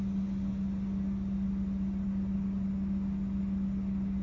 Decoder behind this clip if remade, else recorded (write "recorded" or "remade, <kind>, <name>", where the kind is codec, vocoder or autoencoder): recorded